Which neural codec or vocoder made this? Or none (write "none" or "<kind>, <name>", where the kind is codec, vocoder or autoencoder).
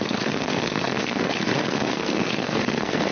codec, SNAC